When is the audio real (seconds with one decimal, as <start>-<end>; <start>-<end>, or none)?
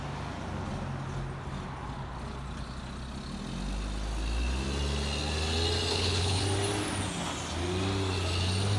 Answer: 0.0-5.9; 6.4-8.8